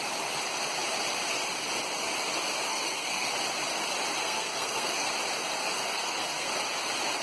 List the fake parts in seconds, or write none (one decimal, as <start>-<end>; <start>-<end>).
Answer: 2.7-3.3; 4.2-5.1; 5.6-6.5